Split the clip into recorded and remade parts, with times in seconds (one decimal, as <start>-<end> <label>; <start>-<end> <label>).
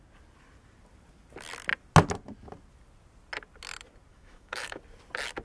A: 0.0-4.1 recorded; 4.1-4.8 remade; 4.8-5.4 recorded